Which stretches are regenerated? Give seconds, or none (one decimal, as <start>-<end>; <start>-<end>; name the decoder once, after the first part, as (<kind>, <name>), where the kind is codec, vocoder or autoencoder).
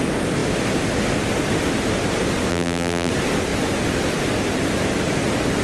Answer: 2.5-3.1 (vocoder, BigVGAN v2)